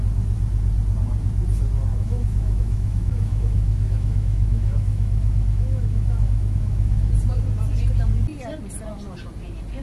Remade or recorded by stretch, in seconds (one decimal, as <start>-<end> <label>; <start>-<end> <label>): 0.0-1.9 recorded; 1.9-7.1 remade; 7.1-9.8 recorded